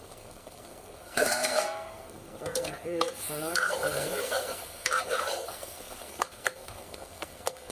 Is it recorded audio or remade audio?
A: remade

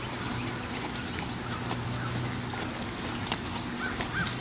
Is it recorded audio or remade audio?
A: recorded